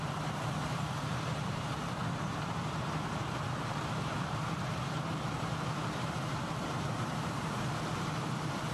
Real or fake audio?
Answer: fake